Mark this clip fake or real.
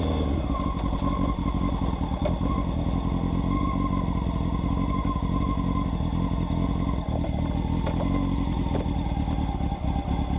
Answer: real